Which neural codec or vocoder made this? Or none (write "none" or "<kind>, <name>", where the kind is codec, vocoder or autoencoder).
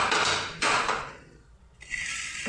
vocoder, BigVGAN v2